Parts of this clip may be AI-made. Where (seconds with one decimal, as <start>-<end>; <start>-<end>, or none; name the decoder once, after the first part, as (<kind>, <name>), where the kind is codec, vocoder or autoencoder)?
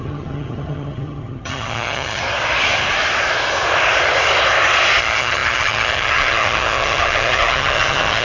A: 0.0-2.2 (vocoder, HiFi-GAN); 5.0-8.2